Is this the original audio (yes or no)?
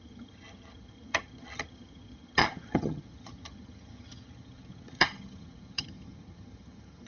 no